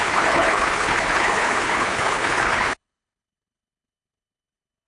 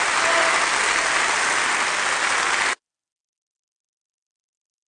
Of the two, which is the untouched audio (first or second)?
second